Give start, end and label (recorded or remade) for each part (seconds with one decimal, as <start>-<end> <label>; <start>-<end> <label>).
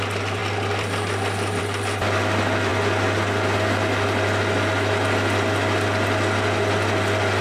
0.0-7.4 recorded